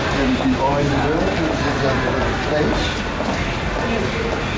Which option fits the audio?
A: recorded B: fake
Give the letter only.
A